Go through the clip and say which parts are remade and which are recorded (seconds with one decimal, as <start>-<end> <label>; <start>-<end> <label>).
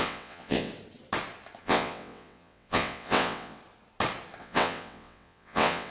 0.0-0.7 remade; 0.7-1.6 recorded; 1.6-3.6 remade; 3.6-4.4 recorded; 4.4-5.9 remade